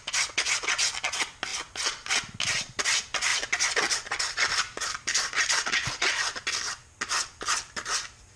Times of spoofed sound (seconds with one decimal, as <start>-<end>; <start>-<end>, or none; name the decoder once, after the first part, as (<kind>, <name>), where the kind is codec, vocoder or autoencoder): 3.3-6.1 (vocoder, BigVGAN v2)